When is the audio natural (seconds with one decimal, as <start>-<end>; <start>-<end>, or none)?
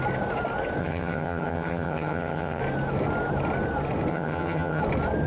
0.0-0.8; 2.6-4.1; 4.8-5.3